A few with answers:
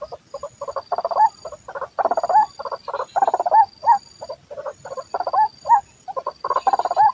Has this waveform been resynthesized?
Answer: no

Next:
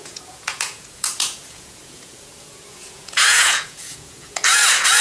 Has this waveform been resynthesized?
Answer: yes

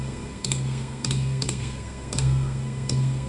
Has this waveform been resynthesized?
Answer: yes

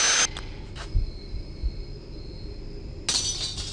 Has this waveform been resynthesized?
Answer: no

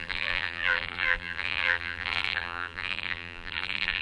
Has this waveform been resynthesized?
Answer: yes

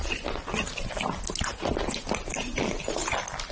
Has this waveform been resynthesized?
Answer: no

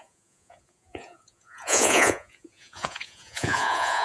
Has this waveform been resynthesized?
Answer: yes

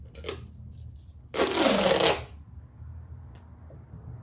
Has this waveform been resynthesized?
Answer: no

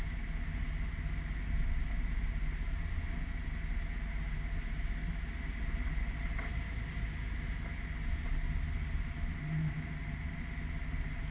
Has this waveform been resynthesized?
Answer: no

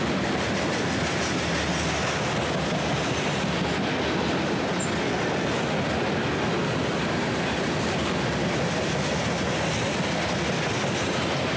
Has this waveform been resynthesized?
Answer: no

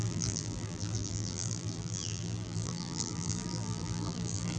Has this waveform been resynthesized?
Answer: yes